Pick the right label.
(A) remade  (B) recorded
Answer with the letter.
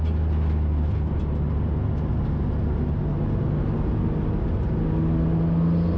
B